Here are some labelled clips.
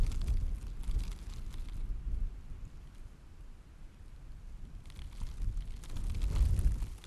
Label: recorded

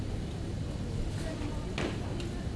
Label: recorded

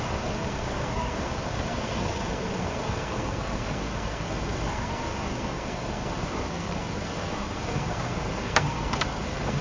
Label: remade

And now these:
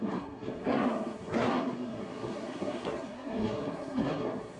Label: remade